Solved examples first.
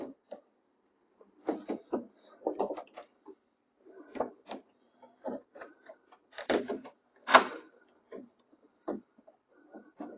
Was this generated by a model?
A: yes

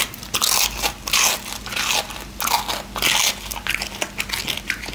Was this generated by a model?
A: no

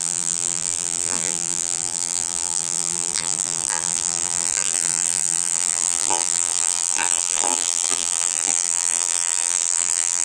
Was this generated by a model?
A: yes